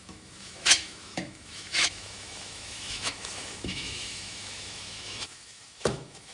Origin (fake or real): fake